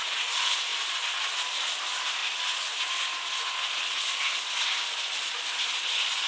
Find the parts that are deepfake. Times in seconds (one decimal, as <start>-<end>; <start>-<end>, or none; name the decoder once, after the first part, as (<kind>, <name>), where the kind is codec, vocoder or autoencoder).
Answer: none